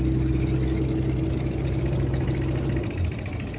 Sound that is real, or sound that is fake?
real